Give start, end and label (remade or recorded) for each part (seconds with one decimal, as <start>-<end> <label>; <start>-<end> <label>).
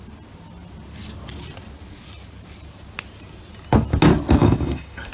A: 0.0-4.4 recorded; 4.4-5.1 remade